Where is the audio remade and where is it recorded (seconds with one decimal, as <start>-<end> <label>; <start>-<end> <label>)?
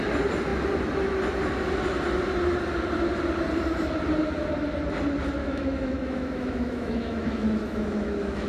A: 0.0-5.4 recorded; 5.4-8.5 remade